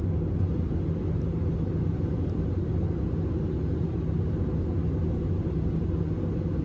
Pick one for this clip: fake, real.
real